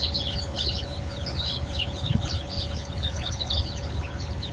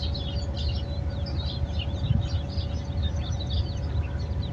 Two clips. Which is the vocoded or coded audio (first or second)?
first